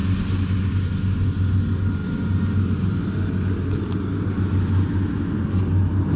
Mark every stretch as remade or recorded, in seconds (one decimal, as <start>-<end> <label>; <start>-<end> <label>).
0.0-6.2 recorded

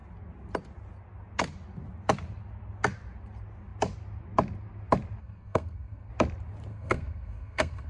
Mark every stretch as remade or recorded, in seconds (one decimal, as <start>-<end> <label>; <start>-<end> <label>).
0.0-5.2 recorded; 5.2-6.1 remade; 6.1-6.7 recorded; 6.7-7.9 remade

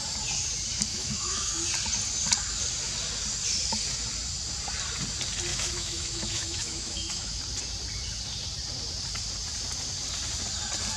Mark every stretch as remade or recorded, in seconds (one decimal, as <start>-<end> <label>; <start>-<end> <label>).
0.0-0.9 recorded; 0.9-1.5 remade; 1.5-5.5 recorded; 5.5-7.4 remade; 7.4-11.0 recorded

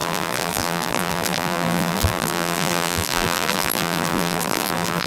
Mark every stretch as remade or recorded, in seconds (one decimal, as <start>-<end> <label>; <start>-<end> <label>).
0.0-5.1 remade

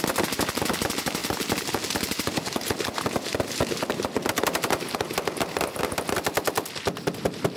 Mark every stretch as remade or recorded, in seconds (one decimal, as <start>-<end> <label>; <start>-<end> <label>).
0.0-7.6 recorded

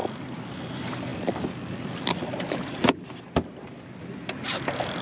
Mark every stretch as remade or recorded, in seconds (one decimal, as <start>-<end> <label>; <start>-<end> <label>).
0.0-5.0 recorded

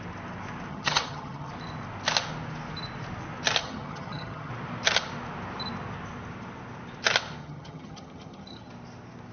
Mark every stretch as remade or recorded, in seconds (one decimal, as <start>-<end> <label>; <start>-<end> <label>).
0.0-0.7 recorded; 0.7-1.5 remade; 1.5-3.6 recorded; 3.6-4.5 remade; 4.5-7.4 recorded; 7.4-8.7 remade; 8.7-9.3 recorded

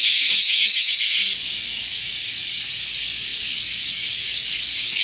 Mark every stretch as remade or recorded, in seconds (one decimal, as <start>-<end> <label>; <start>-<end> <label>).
0.0-5.0 remade